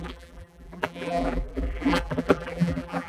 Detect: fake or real fake